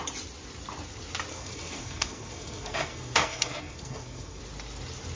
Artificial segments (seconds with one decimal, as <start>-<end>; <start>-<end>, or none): 1.3-4.4